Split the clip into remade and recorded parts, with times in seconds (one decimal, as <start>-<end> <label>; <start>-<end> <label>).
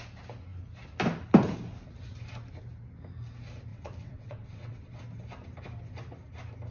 0.0-3.7 recorded; 3.7-5.0 remade; 5.0-6.7 recorded